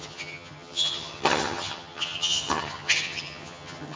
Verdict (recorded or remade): remade